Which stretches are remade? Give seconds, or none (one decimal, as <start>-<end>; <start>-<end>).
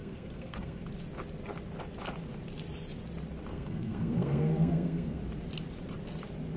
0.0-0.8; 3.5-5.2